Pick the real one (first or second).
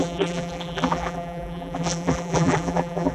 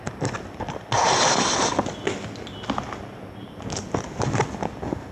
second